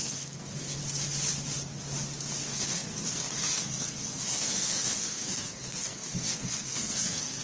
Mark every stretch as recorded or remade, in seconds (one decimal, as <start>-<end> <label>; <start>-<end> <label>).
0.0-0.8 remade; 0.8-2.4 recorded; 2.4-7.4 remade